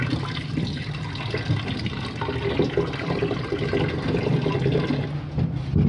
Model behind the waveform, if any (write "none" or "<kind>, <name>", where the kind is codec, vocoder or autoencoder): none